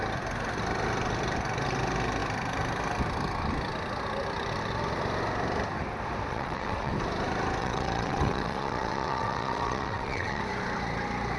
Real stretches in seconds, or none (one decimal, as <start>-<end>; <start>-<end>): 0.0-6.3; 6.9-7.6; 10.4-11.4